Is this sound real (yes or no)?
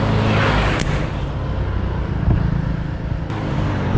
yes